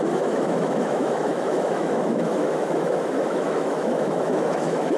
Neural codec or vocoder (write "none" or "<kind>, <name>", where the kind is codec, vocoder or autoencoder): autoencoder, DAC-VAE